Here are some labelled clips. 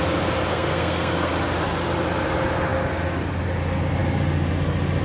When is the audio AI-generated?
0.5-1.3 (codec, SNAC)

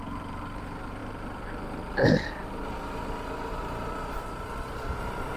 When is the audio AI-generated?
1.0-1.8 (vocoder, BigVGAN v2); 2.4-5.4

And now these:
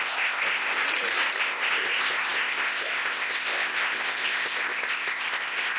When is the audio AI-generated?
0.0-0.8 (codec, ZipCodec); 1.4-5.8

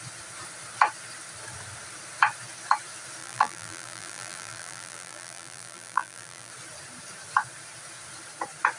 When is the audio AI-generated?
3.2-6.5 (vocoder, BigVGAN v2)